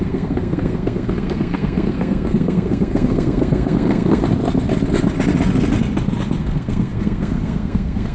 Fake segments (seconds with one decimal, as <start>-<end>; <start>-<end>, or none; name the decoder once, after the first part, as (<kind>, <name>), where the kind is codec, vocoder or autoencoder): 0.0-4.2 (codec, SNAC); 6.4-8.1